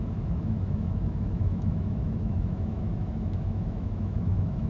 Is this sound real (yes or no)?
no